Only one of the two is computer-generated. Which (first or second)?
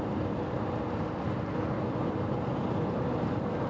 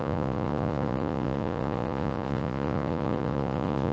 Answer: second